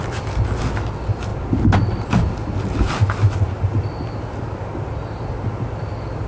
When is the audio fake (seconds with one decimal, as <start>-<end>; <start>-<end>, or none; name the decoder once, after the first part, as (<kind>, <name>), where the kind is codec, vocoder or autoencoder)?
none